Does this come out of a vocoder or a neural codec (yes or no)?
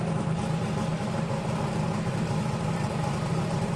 no